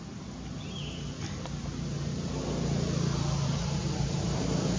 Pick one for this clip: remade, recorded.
recorded